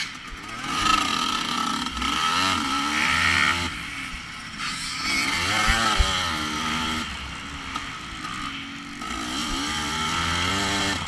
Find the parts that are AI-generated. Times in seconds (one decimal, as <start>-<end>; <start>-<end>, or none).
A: none